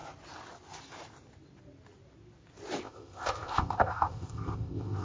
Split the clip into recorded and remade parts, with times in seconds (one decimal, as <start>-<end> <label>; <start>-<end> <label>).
0.0-2.8 recorded; 2.8-5.0 remade

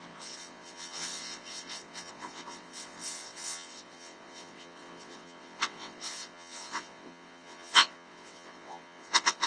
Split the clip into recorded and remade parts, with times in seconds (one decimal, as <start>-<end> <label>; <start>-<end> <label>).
0.0-9.5 remade

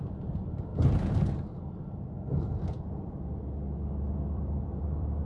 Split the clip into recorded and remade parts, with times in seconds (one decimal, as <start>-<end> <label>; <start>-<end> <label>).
0.0-0.7 remade; 0.7-3.9 recorded; 3.9-5.3 remade

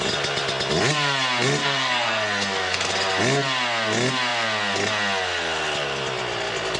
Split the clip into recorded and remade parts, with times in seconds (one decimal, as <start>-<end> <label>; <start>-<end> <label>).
0.0-1.6 recorded; 1.6-2.9 remade; 2.9-6.8 recorded